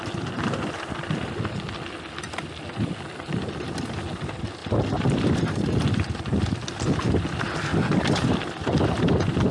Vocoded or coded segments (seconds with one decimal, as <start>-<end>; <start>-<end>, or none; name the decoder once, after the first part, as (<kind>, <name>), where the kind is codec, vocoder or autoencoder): 4.6-5.2 (vocoder, BigVGAN v2)